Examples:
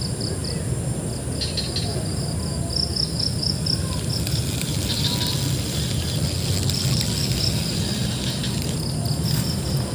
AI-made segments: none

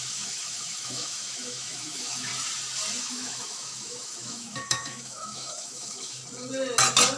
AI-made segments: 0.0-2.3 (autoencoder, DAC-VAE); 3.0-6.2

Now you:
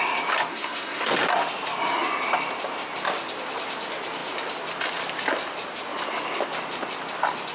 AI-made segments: 0.5-1.1 (codec, SNAC)